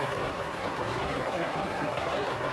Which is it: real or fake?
fake